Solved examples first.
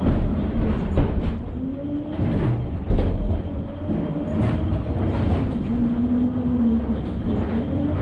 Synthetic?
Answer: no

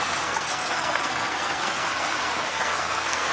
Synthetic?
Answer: yes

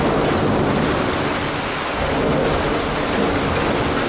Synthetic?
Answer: no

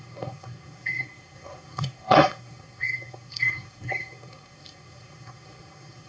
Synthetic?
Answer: yes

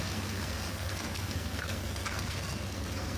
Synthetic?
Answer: yes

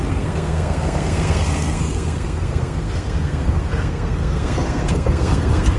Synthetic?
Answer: yes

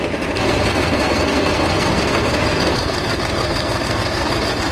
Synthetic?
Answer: yes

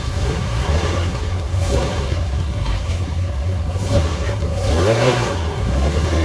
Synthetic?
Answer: yes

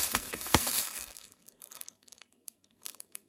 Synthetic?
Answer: yes